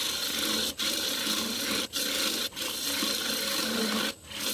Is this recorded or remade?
recorded